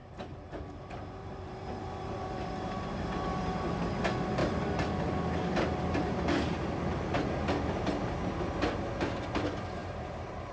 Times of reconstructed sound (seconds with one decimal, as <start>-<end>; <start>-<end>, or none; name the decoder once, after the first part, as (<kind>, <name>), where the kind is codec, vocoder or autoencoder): 0.0-3.7 (vocoder, BigVGAN v2); 9.8-10.5